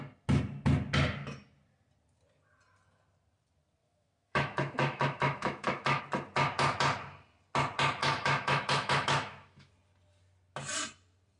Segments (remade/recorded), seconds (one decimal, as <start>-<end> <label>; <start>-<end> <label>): 0.0-3.8 recorded; 3.8-6.0 remade; 6.0-8.0 recorded; 8.0-9.7 remade; 9.7-11.4 recorded

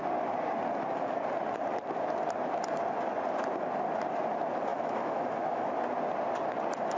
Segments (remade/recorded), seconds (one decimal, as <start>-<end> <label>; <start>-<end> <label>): 0.0-4.7 recorded; 4.7-5.7 remade; 5.7-7.0 recorded

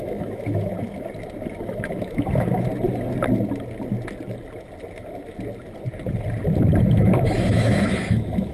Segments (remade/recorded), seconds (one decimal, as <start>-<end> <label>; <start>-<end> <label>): 0.0-0.7 remade; 0.7-1.9 recorded; 1.9-2.7 remade; 2.7-6.8 recorded; 6.8-8.5 remade

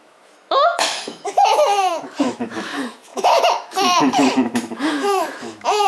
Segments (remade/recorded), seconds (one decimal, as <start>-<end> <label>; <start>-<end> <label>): 0.0-5.9 remade

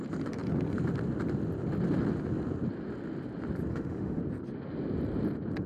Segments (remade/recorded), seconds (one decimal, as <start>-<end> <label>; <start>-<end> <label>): 0.0-3.7 recorded; 3.7-4.2 remade; 4.2-5.7 recorded

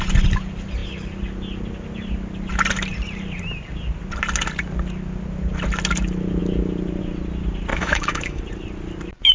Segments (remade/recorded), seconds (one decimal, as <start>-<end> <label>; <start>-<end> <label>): 0.0-7.7 recorded; 7.7-8.4 remade; 8.4-9.3 recorded

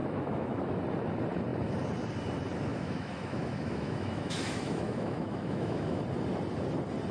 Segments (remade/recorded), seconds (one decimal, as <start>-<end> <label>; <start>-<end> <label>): 0.0-0.8 remade; 0.8-2.7 recorded; 2.7-6.0 remade; 6.0-7.1 recorded

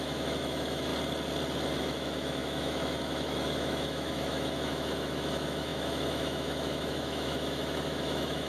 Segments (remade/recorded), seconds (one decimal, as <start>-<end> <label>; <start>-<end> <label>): 0.0-0.9 remade; 0.9-1.8 recorded; 1.8-8.5 remade